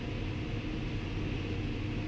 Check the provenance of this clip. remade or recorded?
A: recorded